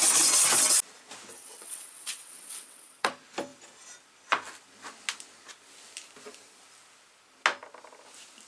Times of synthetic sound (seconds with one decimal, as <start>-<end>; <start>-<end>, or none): 1.3-3.1